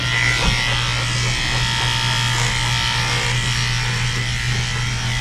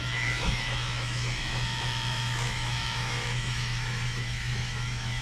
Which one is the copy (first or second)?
second